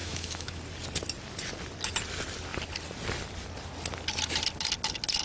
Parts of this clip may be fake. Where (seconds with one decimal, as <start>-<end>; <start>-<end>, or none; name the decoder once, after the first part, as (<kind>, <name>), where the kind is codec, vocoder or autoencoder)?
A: 0.0-0.6 (autoencoder, DAC-VAE)